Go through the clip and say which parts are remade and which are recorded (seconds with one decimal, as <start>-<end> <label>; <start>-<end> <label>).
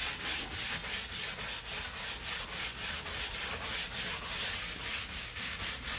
0.0-5.0 recorded; 5.0-5.6 remade; 5.6-6.0 recorded